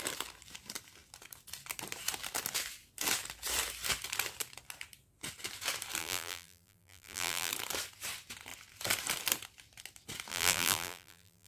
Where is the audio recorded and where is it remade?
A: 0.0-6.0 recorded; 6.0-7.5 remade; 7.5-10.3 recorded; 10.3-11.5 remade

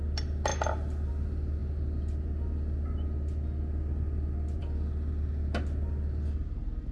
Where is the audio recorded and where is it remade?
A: 0.0-6.9 recorded

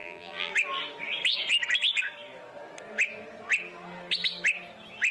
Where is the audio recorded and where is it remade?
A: 0.0-0.5 remade; 0.5-5.1 recorded

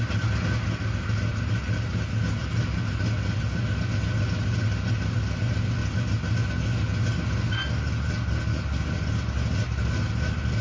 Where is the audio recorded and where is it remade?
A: 0.0-1.3 recorded; 1.3-1.9 remade; 1.9-2.4 recorded; 2.4-3.1 remade; 3.1-10.6 recorded

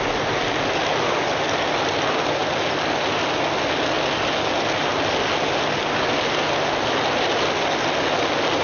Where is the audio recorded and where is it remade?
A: 0.0-8.6 recorded